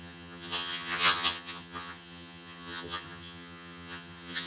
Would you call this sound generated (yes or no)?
yes